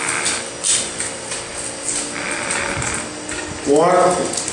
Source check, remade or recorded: recorded